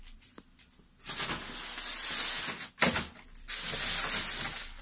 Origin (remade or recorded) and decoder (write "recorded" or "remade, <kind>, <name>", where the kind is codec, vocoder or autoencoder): recorded